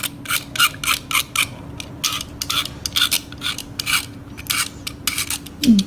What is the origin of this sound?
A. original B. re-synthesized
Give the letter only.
A